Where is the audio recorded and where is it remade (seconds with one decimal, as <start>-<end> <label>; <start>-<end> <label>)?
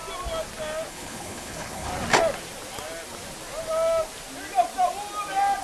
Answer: 0.0-0.9 recorded; 0.9-1.9 remade; 1.9-5.6 recorded